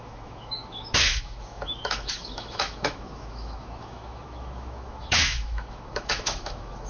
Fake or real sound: fake